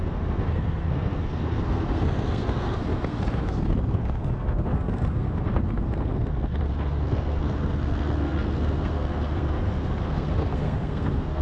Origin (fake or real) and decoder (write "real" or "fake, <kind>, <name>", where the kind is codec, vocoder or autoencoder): fake, codec, SNAC